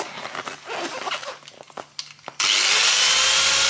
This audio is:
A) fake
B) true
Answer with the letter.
B